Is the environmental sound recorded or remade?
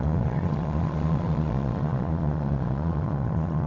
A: remade